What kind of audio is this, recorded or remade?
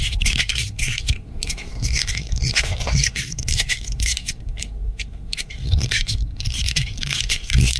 remade